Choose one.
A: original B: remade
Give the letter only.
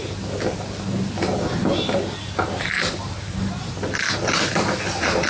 A